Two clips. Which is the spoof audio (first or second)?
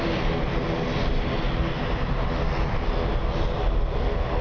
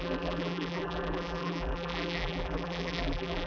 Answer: second